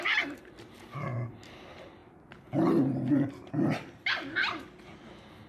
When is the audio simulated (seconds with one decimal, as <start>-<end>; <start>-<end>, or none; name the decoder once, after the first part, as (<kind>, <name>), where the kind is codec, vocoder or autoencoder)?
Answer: none